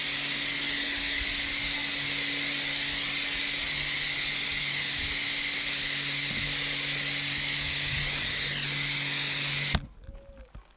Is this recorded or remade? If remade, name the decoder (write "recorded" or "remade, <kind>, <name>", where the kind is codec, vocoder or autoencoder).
recorded